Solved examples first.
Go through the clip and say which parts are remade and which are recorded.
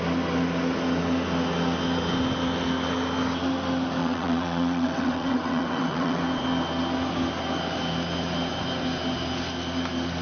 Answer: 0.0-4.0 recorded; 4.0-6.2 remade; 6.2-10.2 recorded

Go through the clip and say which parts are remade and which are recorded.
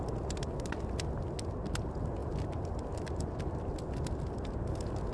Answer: 0.0-5.1 recorded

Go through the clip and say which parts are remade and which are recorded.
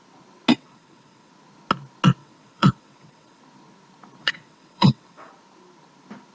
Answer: 0.0-0.5 recorded; 0.5-1.3 remade; 1.3-2.2 recorded; 2.2-3.4 remade; 3.4-4.2 recorded; 4.2-5.3 remade; 5.3-6.3 recorded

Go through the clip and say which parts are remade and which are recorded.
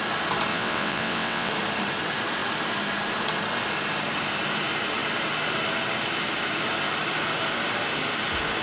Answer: 0.0-0.5 recorded; 0.5-1.5 remade; 1.5-8.6 recorded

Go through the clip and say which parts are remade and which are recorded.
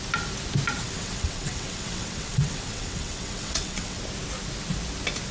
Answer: 0.0-0.8 recorded; 0.8-4.0 remade; 4.0-5.3 recorded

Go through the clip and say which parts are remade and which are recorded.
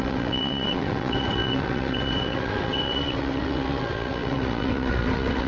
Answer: 0.0-5.5 remade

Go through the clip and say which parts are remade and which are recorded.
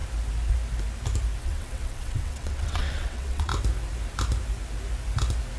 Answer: 0.0-1.4 recorded; 1.4-3.5 remade; 3.5-5.6 recorded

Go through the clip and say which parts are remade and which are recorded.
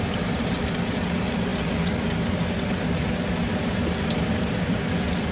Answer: 0.0-5.3 recorded